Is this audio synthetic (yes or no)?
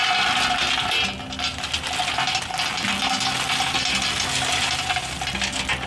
no